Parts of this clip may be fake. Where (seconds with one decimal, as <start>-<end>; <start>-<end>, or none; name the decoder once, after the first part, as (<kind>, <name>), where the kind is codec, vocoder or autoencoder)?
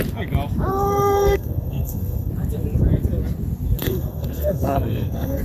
0.7-2.3 (codec, SNAC); 3.8-5.4